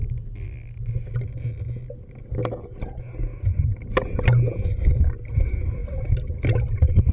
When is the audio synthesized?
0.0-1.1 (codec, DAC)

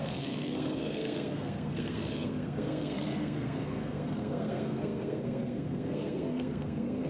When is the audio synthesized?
0.0-7.1 (codec, SNAC)

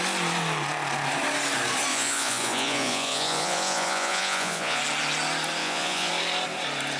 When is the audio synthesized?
1.9-4.8 (vocoder, Vocos); 5.6-6.1